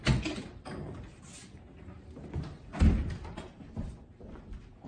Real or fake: real